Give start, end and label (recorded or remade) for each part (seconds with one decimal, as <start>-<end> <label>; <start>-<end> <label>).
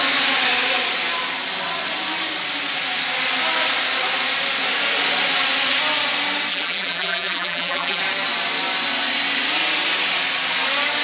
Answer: 0.0-6.5 recorded; 6.5-8.0 remade; 8.0-11.0 recorded